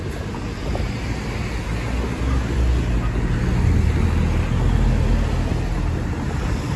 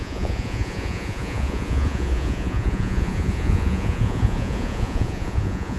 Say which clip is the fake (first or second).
second